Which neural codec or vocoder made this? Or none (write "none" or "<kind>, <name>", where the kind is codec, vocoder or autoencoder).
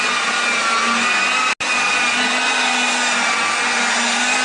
none